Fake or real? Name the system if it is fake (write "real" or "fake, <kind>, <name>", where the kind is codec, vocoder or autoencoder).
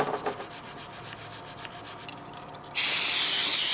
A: real